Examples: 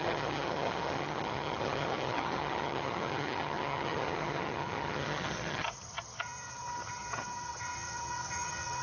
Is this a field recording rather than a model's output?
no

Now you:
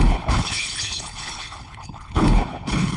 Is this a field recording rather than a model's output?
no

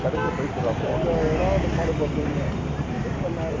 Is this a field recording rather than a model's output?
yes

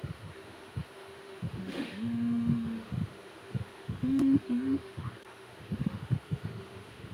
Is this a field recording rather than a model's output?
no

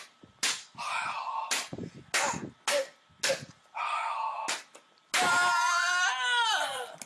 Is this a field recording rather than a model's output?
yes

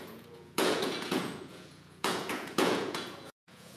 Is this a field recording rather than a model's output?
no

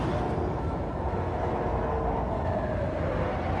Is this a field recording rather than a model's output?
yes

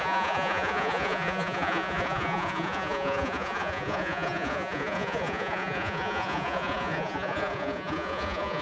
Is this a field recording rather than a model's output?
no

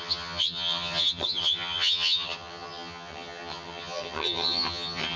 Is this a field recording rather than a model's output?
no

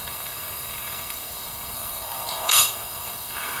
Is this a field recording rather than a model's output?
no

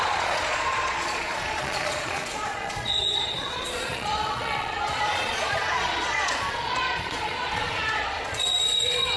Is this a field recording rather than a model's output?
no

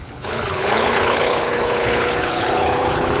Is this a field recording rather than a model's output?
no